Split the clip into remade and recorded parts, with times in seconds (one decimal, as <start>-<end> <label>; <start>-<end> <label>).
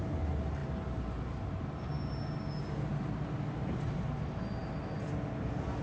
0.0-5.8 recorded